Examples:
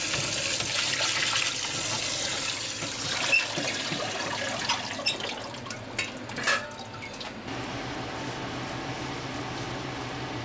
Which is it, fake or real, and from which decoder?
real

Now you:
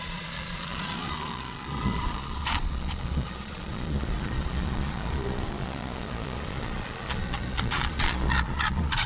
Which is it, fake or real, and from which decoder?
fake, vocoder, Vocos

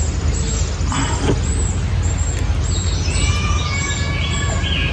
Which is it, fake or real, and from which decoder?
real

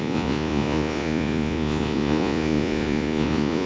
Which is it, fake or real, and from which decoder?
fake, vocoder, Vocos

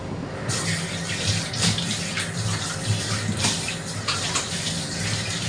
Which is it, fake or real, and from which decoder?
real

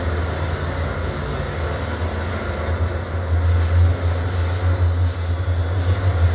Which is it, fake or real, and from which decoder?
real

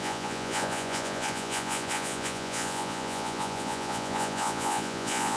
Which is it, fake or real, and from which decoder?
fake, vocoder, Vocos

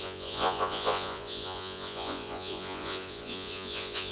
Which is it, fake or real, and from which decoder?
fake, vocoder, Vocos